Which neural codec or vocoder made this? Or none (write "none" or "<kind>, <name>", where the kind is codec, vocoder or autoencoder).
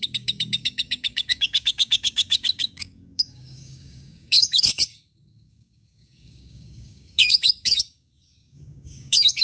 codec, DAC